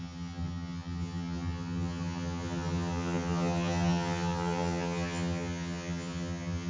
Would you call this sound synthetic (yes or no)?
yes